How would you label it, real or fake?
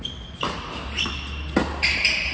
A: real